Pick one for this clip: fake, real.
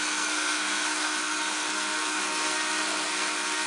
fake